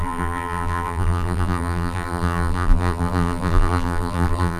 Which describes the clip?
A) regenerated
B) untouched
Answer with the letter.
A